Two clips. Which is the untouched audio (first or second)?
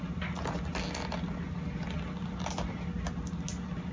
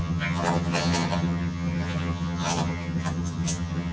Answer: first